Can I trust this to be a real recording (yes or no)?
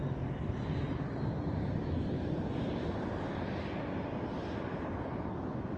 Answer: yes